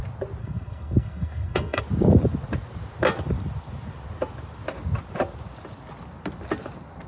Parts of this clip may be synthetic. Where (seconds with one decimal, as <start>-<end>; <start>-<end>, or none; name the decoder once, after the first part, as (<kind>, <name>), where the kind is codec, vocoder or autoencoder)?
0.4-1.8 (codec, SNAC)